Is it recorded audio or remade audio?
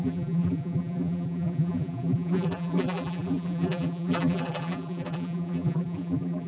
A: remade